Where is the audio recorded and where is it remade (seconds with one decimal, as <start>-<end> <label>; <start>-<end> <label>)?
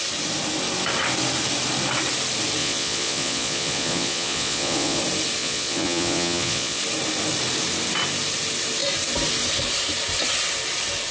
0.0-2.6 recorded; 2.6-5.0 remade; 5.0-5.4 recorded; 5.4-6.8 remade; 6.8-11.1 recorded